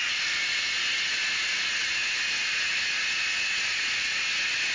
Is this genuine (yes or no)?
yes